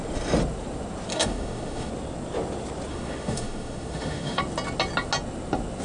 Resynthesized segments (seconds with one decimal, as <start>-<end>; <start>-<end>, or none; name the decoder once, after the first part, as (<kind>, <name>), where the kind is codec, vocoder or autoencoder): 1.1-1.9 (autoencoder, DAC-VAE); 2.9-4.4